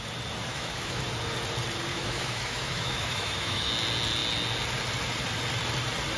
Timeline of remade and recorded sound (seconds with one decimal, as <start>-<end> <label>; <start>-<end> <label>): 0.0-0.5 recorded; 0.5-1.0 remade; 1.0-1.9 recorded; 1.9-3.7 remade; 3.7-6.2 recorded